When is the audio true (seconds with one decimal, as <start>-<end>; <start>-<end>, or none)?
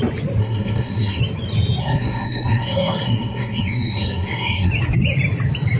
0.0-0.4; 1.2-1.8; 4.7-5.8